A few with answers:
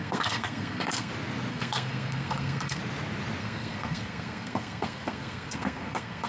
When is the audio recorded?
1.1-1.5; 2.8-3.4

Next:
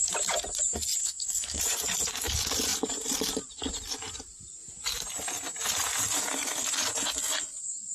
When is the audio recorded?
0.0-1.0; 1.6-7.9

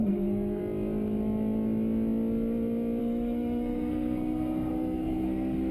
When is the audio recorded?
0.6-3.0

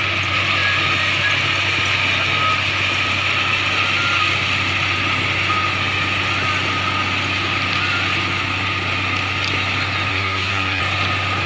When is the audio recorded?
0.0-10.1; 10.8-11.5

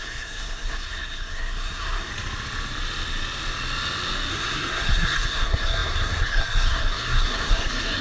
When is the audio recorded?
2.1-4.3

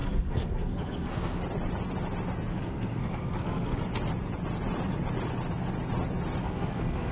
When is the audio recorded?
1.4-2.5; 3.8-6.4

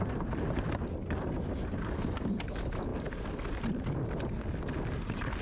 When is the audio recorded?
0.0-5.4